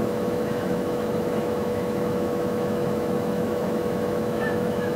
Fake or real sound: fake